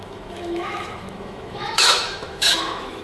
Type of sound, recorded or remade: remade